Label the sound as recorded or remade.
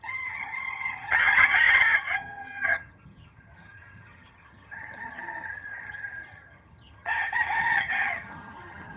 remade